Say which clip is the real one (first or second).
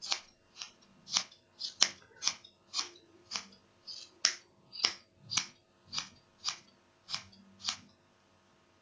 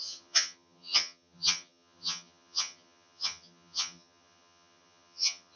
first